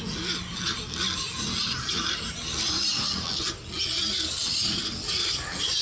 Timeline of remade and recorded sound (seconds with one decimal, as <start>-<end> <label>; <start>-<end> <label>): 0.0-5.8 recorded